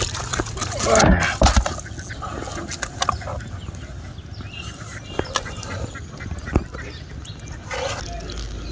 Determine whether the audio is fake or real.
real